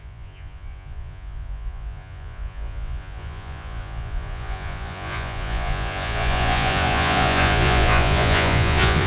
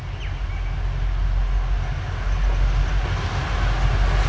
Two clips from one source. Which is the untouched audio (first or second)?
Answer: second